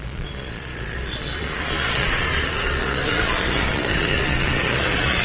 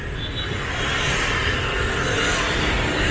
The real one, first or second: second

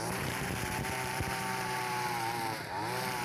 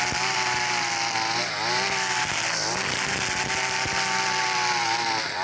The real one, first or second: second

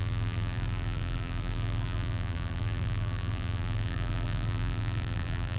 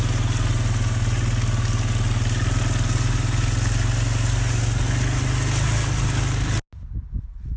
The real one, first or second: second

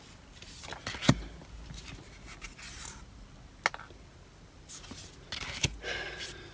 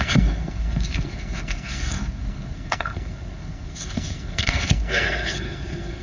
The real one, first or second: first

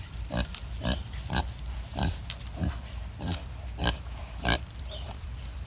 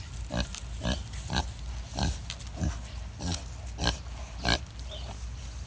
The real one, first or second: second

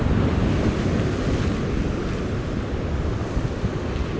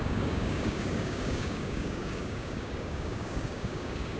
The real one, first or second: first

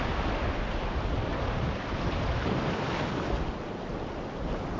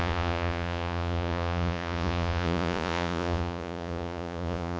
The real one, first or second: first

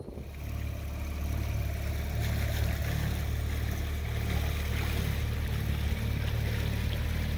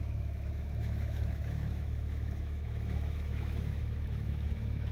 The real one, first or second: first